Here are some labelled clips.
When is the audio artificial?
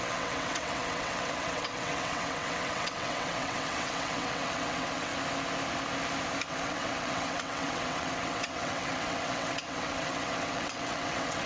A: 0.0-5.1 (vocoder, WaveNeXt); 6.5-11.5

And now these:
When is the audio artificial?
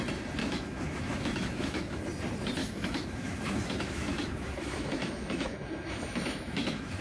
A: 0.4-2.0 (autoencoder, DAC-VAE); 2.6-7.0